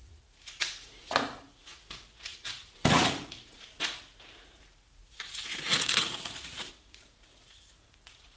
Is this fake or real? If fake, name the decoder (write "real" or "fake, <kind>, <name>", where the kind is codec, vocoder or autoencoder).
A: fake, vocoder, Vocos